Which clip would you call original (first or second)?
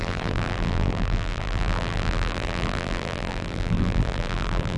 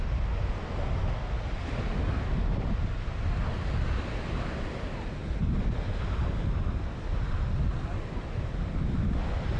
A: second